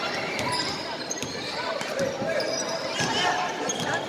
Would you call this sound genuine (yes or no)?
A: yes